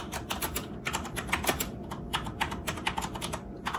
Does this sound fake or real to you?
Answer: fake